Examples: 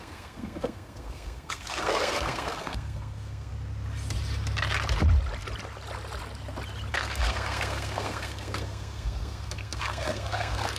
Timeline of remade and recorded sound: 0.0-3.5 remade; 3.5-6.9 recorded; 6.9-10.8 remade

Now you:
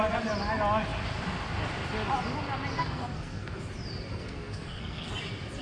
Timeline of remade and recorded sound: 0.0-2.7 recorded; 2.7-3.6 remade; 3.6-4.1 recorded; 4.1-5.1 remade; 5.1-5.6 recorded

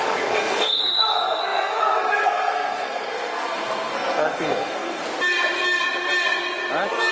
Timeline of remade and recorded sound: 0.0-5.0 remade; 5.0-7.1 recorded